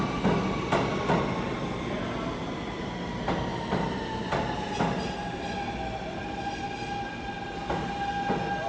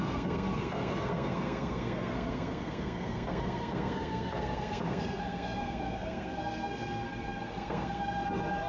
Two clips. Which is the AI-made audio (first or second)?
second